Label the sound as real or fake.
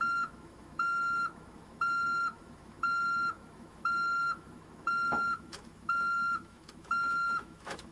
fake